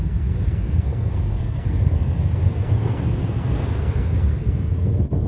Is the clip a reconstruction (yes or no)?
yes